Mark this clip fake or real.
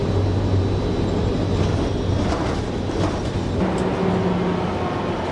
real